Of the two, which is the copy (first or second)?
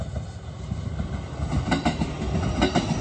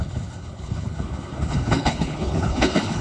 second